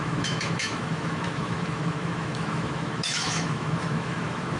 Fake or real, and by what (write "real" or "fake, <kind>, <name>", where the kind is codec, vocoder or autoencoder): fake, autoencoder, DAC-VAE